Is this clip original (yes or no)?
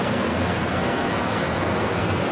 no